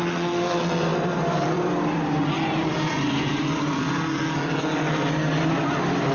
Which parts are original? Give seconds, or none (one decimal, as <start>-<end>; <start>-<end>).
0.0-0.9; 3.9-6.1